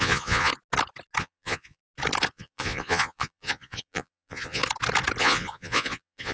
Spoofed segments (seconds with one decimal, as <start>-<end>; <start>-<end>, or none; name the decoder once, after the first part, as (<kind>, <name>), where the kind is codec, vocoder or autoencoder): 0.0-0.5 (vocoder, Vocos); 1.2-1.8; 2.3-4.6; 5.2-6.3